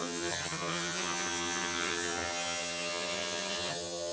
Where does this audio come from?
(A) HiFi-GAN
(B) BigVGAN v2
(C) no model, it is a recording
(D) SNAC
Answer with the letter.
A